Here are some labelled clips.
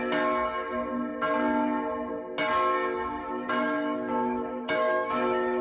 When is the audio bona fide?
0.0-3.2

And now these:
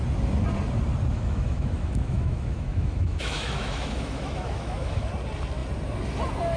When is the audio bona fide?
0.0-1.1; 5.1-6.6

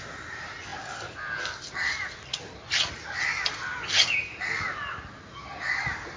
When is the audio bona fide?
0.0-6.2

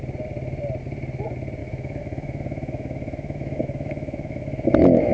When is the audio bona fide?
0.0-1.6

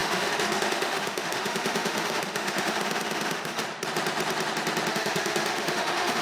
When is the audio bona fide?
3.6-4.9

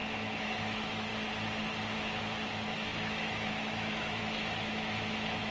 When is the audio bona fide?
1.1-2.2